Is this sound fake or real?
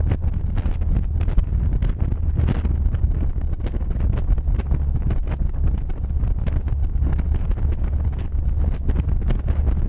real